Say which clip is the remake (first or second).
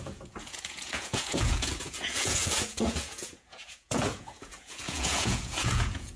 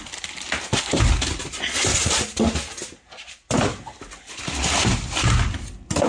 first